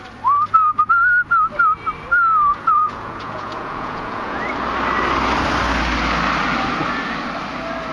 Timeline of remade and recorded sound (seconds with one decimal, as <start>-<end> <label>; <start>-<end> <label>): 0.0-2.5 recorded; 2.5-4.4 remade; 4.4-7.9 recorded